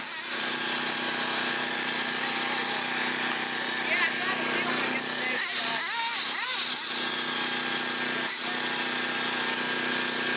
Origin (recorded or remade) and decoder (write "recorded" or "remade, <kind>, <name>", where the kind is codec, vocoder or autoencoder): recorded